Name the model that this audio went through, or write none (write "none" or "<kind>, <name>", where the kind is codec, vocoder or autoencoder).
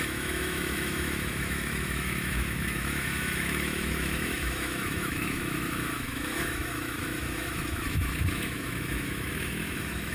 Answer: autoencoder, DAC-VAE